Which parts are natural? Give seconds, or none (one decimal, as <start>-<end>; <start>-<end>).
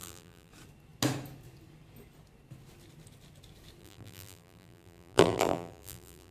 0.5-3.8